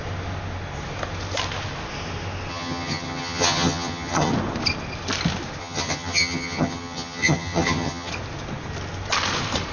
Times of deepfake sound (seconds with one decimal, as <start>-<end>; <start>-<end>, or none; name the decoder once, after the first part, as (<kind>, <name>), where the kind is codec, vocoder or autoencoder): 2.5-4.3 (vocoder, HiFi-GAN); 5.6-8.1

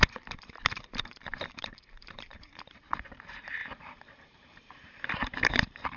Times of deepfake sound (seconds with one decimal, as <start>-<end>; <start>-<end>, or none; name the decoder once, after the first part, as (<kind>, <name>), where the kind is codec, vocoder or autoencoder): 0.0-6.0 (vocoder, BigVGAN v2)

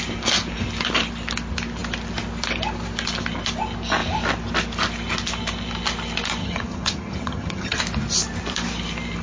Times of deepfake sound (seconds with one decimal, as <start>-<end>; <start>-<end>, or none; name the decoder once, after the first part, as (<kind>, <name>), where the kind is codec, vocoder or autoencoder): 6.4-7.8 (vocoder, HiFi-GAN)